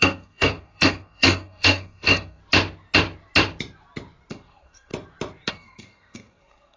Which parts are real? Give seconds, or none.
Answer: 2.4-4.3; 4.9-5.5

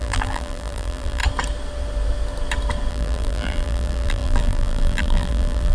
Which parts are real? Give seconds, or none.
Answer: 1.2-2.9

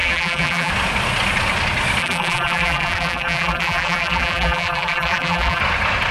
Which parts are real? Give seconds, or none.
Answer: 0.7-2.0; 5.6-6.1

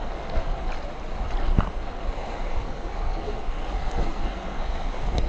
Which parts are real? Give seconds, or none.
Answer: 0.6-1.4

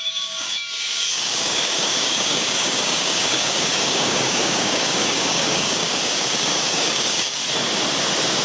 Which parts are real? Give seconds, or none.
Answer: 7.4-8.4

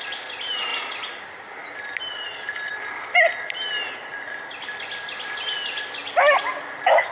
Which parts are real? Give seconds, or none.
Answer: 0.0-7.1

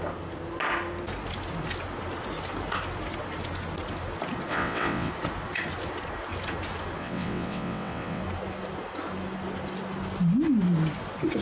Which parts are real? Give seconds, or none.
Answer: 0.0-4.5; 5.1-7.0; 8.2-11.4

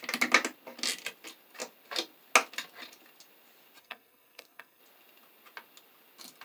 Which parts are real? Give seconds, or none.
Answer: 0.0-3.8; 4.8-6.4